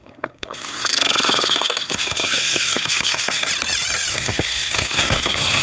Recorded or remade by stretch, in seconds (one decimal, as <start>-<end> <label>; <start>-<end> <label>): 0.0-3.5 remade; 3.5-4.1 recorded; 4.1-5.6 remade